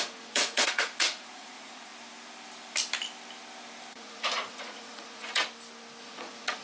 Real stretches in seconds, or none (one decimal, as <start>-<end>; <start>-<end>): 1.9-3.9; 5.4-6.0